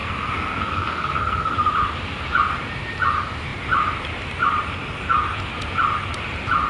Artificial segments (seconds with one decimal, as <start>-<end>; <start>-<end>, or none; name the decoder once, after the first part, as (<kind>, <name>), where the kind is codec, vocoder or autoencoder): 0.0-1.5 (codec, SNAC)